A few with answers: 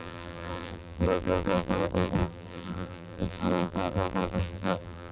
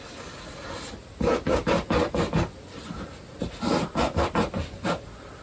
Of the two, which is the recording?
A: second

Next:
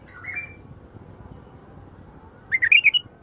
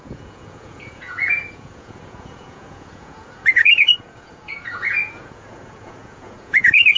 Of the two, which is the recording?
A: first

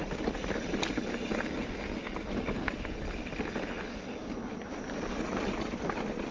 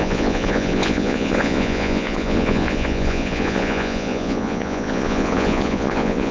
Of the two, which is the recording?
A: first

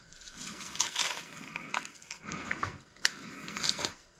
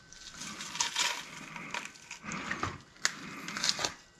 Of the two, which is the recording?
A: second